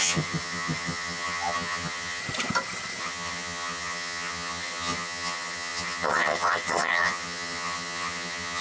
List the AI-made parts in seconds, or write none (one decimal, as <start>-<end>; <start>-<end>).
0.0-2.2; 3.0-8.6